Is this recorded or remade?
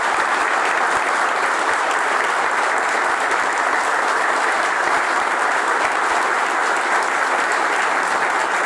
recorded